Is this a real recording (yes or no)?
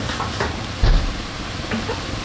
yes